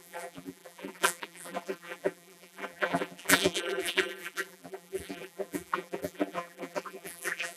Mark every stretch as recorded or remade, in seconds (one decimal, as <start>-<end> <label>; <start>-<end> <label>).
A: 0.0-7.6 remade